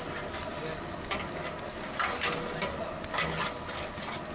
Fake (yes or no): no